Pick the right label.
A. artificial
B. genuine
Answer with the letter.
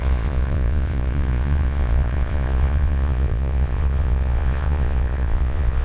A